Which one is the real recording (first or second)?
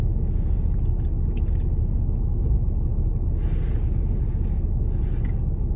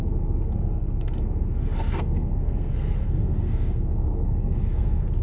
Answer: first